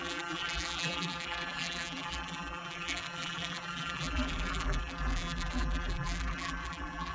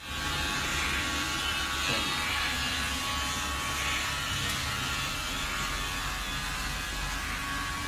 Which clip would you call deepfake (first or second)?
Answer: first